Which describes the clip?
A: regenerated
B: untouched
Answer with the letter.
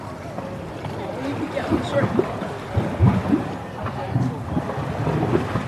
B